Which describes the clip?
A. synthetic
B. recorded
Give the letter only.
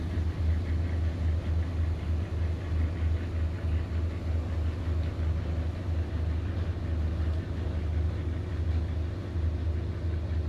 B